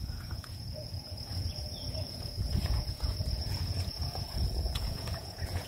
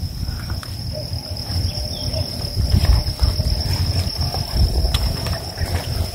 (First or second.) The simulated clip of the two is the first